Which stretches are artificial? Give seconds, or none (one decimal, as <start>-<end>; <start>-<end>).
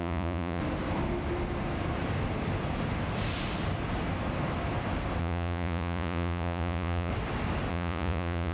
0.0-0.6; 5.2-7.1; 7.7-8.5